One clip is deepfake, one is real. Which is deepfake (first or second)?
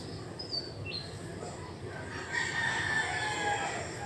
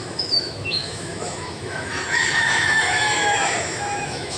second